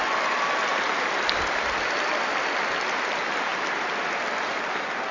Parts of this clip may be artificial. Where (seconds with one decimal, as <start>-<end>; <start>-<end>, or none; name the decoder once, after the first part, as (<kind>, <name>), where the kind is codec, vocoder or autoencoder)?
none